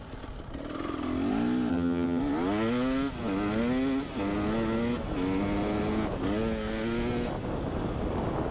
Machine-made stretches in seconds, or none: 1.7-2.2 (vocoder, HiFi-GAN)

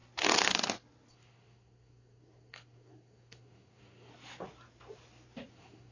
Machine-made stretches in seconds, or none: 1.1-4.1 (codec, SNAC); 5.5-5.9

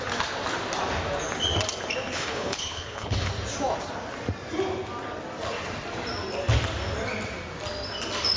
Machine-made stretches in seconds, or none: 2.1-3.3 (codec, HILCodec)